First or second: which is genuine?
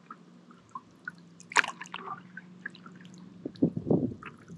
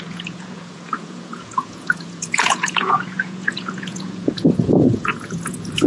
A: first